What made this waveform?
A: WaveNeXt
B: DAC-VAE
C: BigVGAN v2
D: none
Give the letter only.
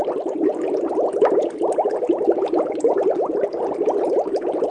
D